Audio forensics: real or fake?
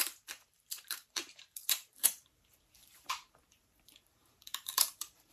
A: fake